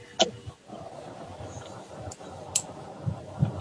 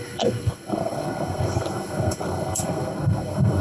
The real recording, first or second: first